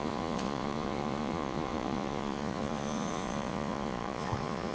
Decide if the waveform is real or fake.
fake